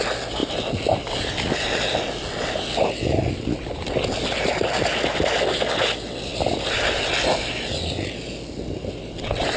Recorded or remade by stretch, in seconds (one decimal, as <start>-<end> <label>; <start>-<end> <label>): 0.0-9.6 recorded